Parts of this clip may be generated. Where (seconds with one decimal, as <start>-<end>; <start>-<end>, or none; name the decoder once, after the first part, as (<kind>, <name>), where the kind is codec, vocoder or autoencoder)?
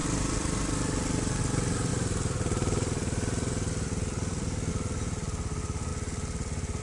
0.0-1.4 (vocoder, BigVGAN v2); 1.9-4.7